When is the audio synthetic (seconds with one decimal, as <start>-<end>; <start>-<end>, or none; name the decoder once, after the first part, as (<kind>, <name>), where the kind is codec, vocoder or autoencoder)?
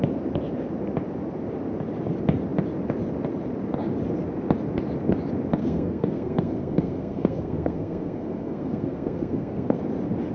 5.6-9.8 (codec, SNAC)